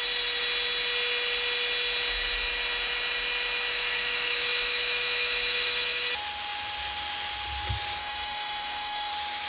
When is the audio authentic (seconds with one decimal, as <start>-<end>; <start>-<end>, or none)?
0.0-3.7; 6.1-8.0; 9.1-9.5